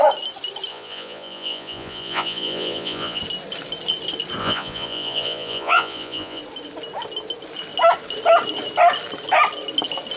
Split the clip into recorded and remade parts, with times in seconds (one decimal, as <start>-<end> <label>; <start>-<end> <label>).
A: 0.0-0.7 recorded; 0.7-3.2 remade; 3.2-4.4 recorded; 4.4-6.4 remade; 6.4-10.2 recorded